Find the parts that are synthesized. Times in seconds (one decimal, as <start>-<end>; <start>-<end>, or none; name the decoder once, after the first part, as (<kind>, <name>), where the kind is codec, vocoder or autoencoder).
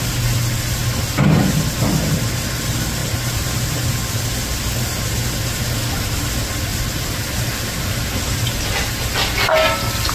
3.0-3.9 (vocoder, BigVGAN v2); 6.7-7.5